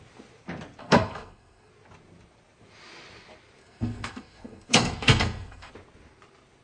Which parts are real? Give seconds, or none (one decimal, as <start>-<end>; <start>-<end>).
0.0-0.8; 1.7-3.6; 5.7-6.6